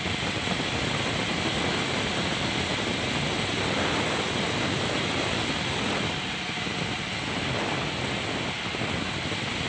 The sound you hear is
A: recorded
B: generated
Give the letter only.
A